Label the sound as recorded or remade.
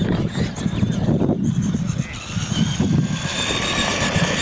recorded